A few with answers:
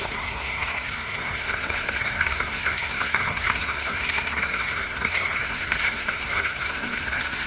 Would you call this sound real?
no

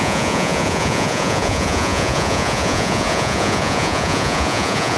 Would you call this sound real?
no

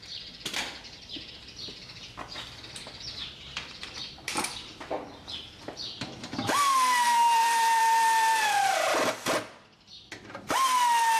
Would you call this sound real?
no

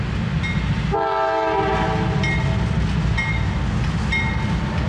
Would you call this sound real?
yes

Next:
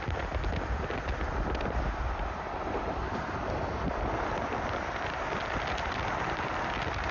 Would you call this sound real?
yes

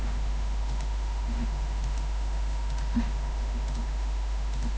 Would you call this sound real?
no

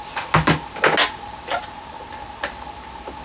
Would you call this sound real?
yes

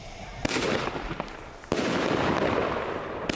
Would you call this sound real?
yes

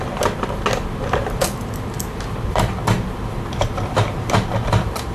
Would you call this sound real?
yes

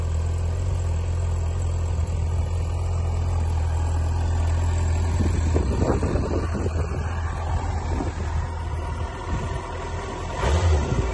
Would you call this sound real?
yes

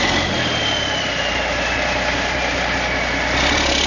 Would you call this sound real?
yes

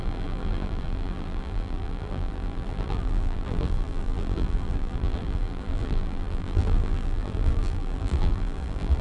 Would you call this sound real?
no